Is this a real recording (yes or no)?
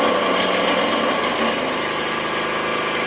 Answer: yes